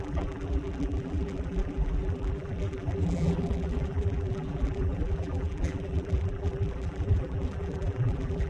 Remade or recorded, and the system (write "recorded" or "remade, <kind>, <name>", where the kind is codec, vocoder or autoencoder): remade, vocoder, BigVGAN v2